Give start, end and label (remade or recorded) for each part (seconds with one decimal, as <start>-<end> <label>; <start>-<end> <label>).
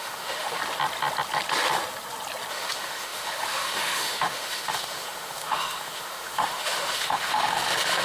0.0-0.6 remade; 0.6-2.5 recorded; 2.5-8.0 remade